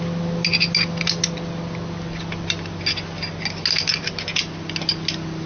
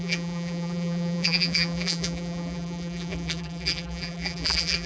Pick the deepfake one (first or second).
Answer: second